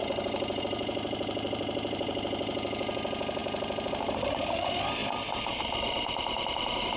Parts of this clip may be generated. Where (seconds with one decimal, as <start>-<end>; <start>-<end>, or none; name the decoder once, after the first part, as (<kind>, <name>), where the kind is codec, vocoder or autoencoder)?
0.0-7.0 (vocoder, BigVGAN v2)